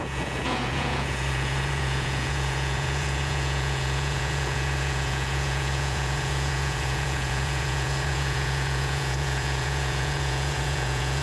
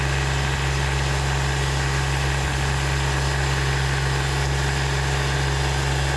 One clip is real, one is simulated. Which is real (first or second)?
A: second